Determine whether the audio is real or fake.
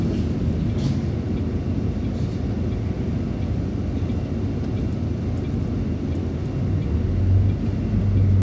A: real